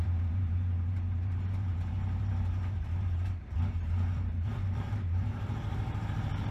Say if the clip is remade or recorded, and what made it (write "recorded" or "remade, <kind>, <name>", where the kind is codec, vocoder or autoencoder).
remade, vocoder, BigVGAN v2